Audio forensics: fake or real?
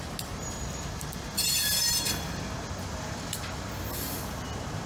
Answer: real